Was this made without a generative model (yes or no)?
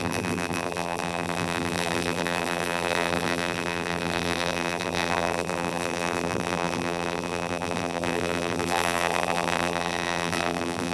no